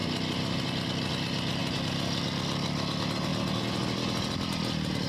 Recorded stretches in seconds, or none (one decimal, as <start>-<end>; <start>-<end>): 0.0-5.1

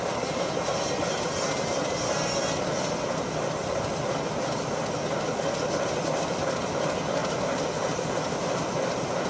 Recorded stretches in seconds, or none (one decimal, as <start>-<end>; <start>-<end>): 0.0-9.3

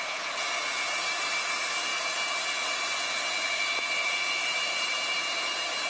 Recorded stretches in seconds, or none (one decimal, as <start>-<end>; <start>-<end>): 0.0-5.9

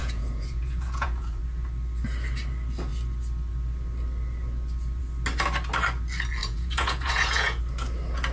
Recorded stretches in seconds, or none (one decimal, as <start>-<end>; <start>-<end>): 1.4-6.4; 7.6-8.3

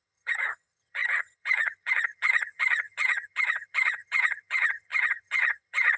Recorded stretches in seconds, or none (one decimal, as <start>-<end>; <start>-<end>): none

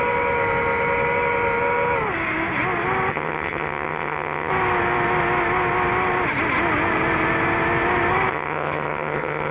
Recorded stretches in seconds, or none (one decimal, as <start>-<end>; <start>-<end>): 0.0-3.1; 4.5-8.3

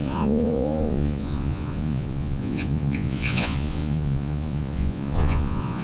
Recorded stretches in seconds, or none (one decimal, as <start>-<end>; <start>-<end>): none

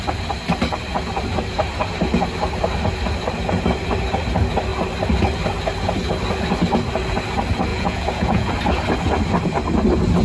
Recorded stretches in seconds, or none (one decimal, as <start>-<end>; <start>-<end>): 0.0-7.7; 8.5-10.2